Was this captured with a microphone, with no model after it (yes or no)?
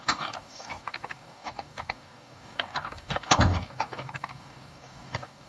no